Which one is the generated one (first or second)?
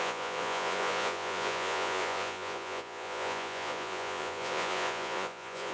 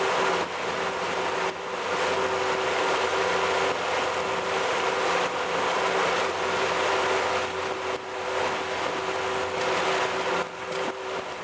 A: first